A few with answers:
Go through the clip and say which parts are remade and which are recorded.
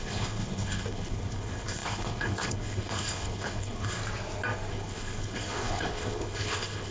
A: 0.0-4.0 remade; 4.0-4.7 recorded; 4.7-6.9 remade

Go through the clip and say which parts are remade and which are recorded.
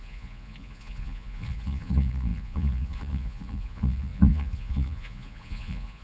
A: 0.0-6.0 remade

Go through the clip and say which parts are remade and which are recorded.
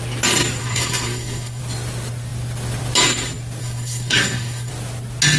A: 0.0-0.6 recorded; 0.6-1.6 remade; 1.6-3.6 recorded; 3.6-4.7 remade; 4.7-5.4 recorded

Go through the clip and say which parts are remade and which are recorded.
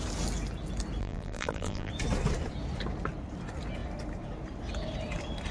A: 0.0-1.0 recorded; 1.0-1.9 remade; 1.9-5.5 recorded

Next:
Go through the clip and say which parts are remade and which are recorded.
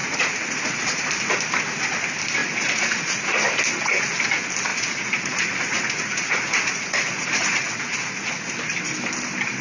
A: 0.0-1.0 remade; 1.0-2.4 recorded; 2.4-2.9 remade; 2.9-4.7 recorded; 4.7-8.3 remade; 8.3-9.6 recorded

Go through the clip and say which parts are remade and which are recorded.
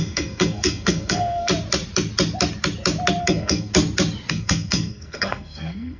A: 0.0-1.5 remade; 1.5-3.2 recorded; 3.2-3.7 remade; 3.7-4.3 recorded; 4.3-6.0 remade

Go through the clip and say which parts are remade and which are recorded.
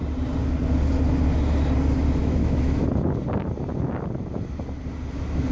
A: 0.0-2.2 recorded; 2.2-2.8 remade; 2.8-5.5 recorded